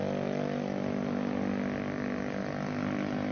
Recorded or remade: recorded